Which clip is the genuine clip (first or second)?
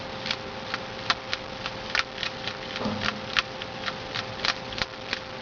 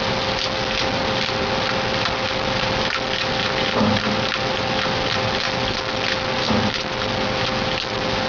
second